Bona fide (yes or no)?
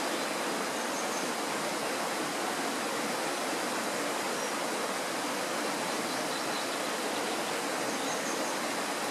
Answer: yes